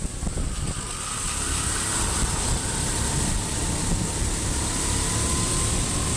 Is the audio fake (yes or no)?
no